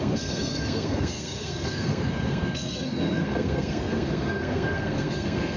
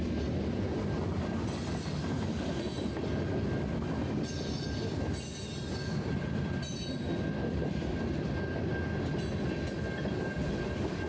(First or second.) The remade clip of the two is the first